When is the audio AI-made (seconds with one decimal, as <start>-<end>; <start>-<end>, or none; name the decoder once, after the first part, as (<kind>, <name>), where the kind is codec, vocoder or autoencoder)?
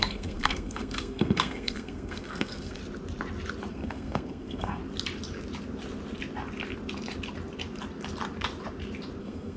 0.0-2.8 (codec, SNAC); 3.7-4.8; 9.2-9.6